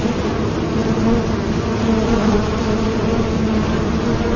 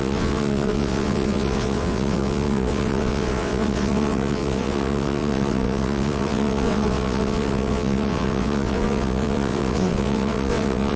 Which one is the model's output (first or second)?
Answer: second